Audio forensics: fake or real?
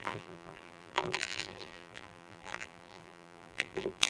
fake